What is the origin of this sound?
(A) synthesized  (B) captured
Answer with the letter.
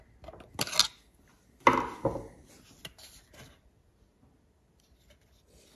B